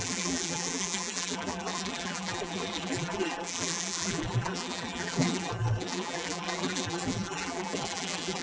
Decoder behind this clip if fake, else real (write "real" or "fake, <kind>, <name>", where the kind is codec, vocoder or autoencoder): fake, vocoder, BigVGAN v2